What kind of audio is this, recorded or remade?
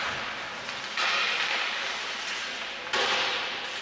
recorded